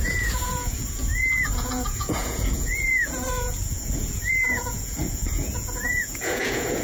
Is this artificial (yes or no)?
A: yes